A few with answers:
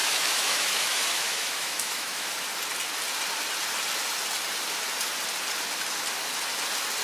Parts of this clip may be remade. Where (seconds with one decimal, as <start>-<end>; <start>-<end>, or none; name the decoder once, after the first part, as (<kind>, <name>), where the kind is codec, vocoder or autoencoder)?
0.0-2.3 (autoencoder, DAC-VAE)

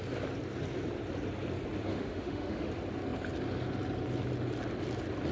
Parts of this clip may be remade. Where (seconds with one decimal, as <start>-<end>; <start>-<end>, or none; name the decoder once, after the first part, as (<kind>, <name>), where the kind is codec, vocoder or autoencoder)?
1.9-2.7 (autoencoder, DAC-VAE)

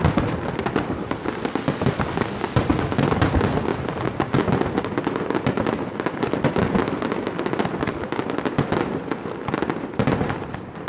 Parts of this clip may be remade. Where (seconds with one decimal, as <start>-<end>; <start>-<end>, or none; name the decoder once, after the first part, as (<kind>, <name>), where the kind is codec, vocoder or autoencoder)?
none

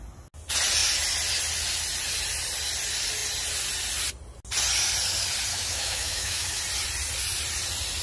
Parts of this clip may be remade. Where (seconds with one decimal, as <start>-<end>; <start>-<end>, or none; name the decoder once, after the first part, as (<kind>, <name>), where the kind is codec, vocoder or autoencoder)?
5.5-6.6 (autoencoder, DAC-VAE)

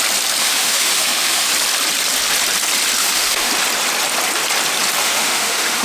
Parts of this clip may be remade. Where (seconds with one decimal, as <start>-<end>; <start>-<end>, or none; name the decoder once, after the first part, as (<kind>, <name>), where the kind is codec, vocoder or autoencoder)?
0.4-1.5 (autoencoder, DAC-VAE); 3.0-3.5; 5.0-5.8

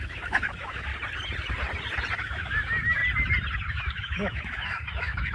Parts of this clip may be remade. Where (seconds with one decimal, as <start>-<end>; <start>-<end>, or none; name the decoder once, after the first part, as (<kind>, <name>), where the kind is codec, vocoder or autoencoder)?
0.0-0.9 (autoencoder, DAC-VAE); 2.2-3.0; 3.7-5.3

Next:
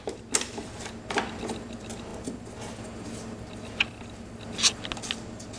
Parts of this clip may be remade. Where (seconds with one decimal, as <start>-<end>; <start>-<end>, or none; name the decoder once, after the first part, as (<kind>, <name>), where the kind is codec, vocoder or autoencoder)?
none